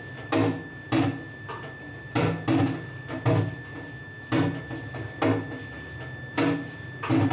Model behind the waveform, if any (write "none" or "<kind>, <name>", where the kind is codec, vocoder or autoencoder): none